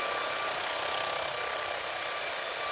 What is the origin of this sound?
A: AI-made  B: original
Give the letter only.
B